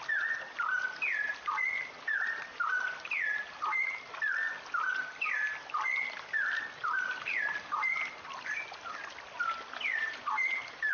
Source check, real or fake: real